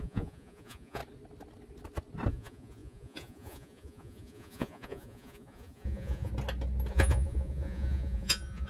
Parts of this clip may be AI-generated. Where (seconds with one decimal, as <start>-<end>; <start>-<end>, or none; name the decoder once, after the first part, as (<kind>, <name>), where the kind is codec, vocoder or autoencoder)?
0.0-1.0 (vocoder, Vocos); 2.3-6.3; 6.9-8.7